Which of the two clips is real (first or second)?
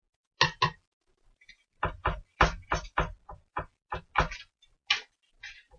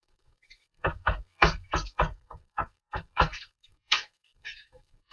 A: first